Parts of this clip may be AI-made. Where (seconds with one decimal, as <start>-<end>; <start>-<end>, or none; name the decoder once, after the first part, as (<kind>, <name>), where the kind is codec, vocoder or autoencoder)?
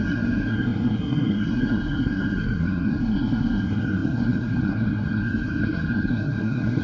0.0-6.8 (codec, SNAC)